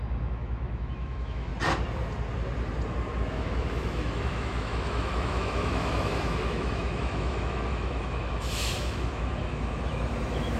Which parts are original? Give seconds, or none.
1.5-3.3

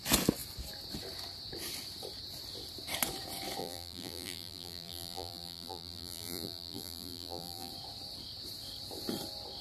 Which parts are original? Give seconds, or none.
0.0-3.6; 7.7-9.6

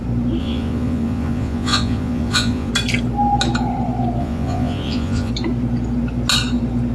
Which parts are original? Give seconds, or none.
0.0-0.4; 2.7-4.2; 5.3-6.9